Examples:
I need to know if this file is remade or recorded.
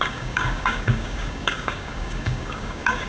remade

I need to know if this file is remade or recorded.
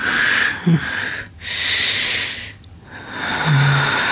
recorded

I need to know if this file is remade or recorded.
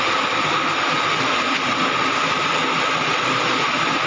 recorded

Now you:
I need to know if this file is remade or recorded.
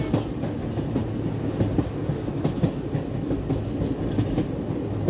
recorded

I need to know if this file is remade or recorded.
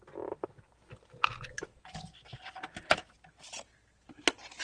recorded